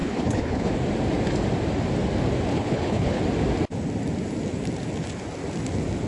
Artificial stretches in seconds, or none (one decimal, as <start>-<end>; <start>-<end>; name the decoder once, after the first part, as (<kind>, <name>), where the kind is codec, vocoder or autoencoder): 0.0-0.7 (codec, HILCodec); 2.5-3.2